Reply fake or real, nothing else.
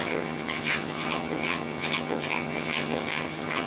fake